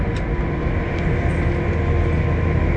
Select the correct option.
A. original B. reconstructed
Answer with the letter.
A